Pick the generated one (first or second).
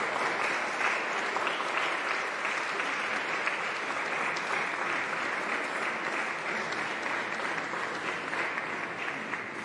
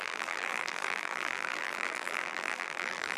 second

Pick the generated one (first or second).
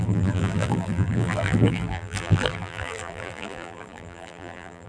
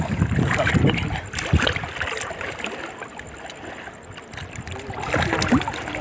first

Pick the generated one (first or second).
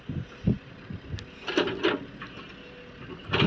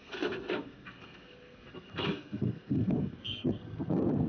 second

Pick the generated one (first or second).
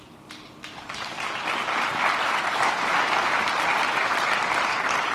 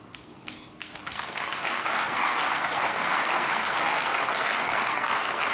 second